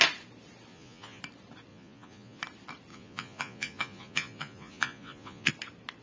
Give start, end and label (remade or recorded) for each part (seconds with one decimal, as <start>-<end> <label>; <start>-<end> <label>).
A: 0.0-0.7 recorded; 0.7-1.2 remade; 1.2-1.7 recorded; 1.7-2.4 remade; 2.4-2.9 recorded; 2.9-5.5 remade; 5.5-6.0 recorded